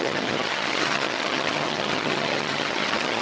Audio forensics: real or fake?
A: fake